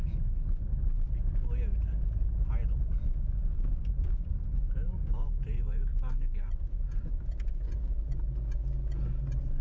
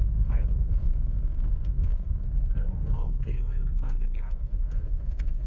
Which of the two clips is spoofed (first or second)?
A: second